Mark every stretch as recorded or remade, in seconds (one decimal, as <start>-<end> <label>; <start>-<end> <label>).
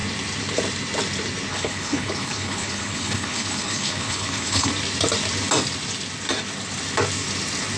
0.0-1.5 recorded; 1.5-4.7 remade; 4.7-7.8 recorded